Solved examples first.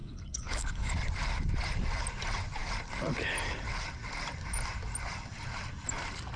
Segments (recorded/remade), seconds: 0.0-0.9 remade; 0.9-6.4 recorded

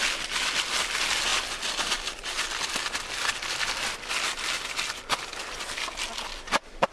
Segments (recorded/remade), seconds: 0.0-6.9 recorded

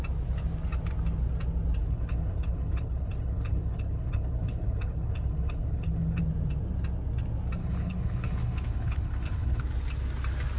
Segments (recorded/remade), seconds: 0.0-1.8 recorded; 1.8-6.2 remade; 6.2-7.6 recorded; 7.6-9.6 remade; 9.6-10.6 recorded